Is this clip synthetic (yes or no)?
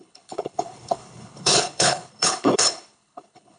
yes